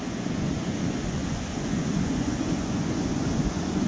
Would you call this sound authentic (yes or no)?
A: no